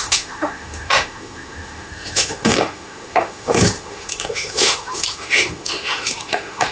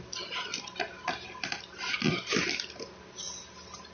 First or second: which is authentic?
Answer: second